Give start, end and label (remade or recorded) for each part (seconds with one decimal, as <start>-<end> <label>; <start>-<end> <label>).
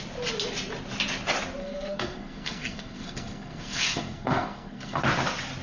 0.0-1.6 recorded; 1.6-5.0 remade; 5.0-5.6 recorded